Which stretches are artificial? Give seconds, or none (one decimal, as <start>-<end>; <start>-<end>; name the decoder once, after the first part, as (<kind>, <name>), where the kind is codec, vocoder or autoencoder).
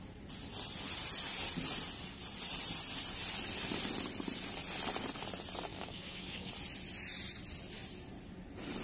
5.7-6.5 (codec, DAC)